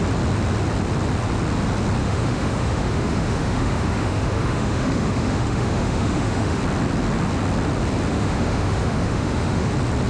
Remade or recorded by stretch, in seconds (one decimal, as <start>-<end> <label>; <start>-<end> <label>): 0.0-2.0 recorded; 2.0-6.6 remade; 6.6-8.1 recorded; 8.1-9.7 remade; 9.7-10.1 recorded